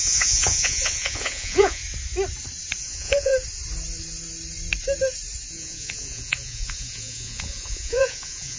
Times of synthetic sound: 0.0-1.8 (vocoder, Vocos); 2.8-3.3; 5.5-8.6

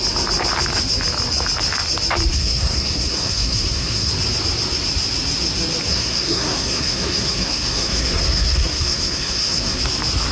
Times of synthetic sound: 2.3-4.1 (codec, SNAC); 5.9-9.8

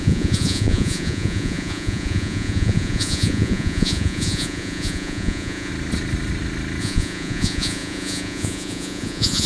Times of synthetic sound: 0.0-5.7 (vocoder, Vocos); 6.8-9.5